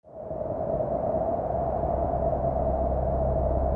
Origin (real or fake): real